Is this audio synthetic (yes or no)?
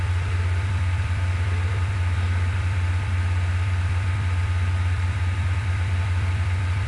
yes